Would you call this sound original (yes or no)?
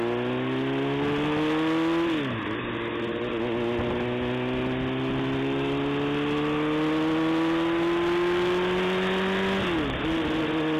yes